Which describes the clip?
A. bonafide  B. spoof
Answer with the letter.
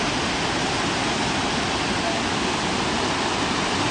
A